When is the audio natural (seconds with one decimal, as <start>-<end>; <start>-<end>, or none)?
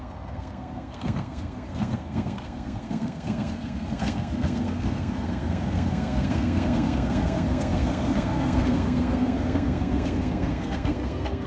none